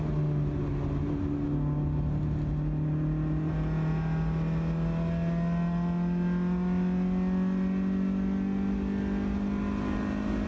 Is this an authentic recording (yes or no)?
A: yes